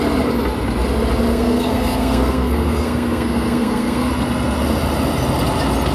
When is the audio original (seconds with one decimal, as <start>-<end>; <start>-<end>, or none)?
0.0-1.3; 4.1-5.9